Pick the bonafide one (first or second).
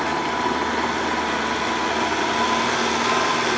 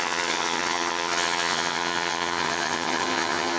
first